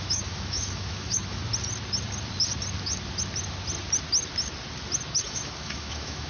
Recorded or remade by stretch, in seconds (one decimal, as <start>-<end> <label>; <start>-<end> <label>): 0.0-1.4 remade; 1.4-5.2 recorded; 5.2-6.3 remade